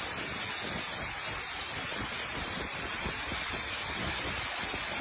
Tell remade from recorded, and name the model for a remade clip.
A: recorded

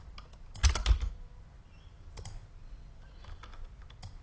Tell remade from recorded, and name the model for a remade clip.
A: recorded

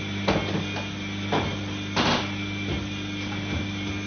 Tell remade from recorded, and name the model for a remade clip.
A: recorded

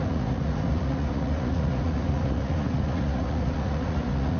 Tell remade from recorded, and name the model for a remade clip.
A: remade, vocoder, Vocos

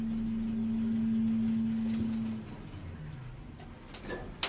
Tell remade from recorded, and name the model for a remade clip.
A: recorded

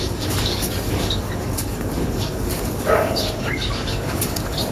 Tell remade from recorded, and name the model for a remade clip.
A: remade, codec, DAC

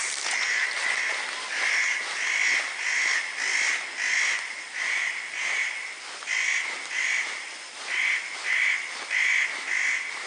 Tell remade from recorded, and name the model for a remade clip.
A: recorded